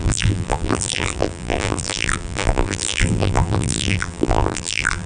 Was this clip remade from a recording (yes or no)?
yes